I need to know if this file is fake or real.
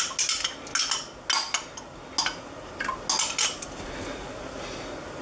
real